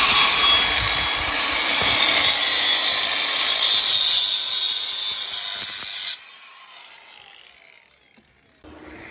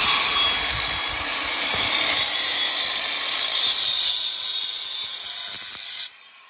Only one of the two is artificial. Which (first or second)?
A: second